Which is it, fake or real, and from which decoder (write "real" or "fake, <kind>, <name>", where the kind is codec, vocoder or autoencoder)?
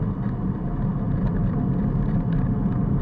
real